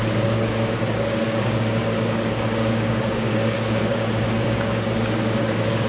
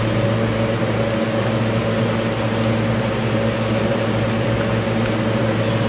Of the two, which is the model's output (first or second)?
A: first